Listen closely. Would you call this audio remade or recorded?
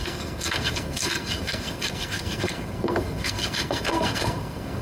remade